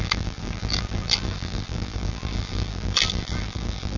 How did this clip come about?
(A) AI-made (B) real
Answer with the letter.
A